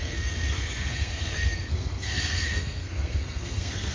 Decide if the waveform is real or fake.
fake